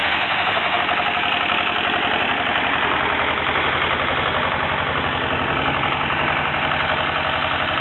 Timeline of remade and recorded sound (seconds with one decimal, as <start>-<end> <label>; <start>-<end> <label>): 0.0-0.8 remade; 0.8-7.8 recorded